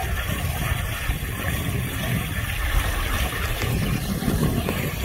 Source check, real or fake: real